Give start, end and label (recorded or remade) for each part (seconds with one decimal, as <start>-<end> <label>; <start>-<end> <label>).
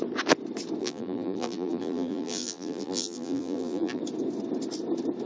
0.0-0.8 recorded; 0.8-4.0 remade; 4.0-5.3 recorded